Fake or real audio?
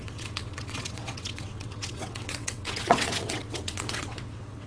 fake